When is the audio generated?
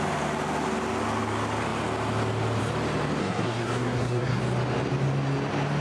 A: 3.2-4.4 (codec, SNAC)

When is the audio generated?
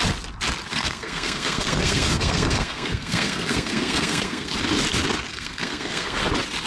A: 0.7-4.5 (codec, SNAC); 5.3-6.2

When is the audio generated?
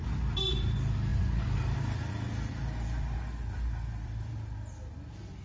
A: none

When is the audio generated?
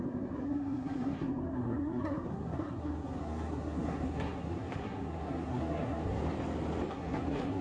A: 0.0-6.2 (codec, SNAC); 6.9-7.6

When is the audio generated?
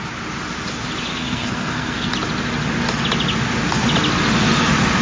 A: 1.1-2.1 (codec, SNAC)